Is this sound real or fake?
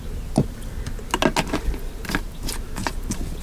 real